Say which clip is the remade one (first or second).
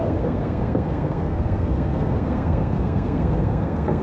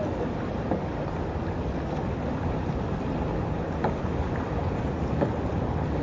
first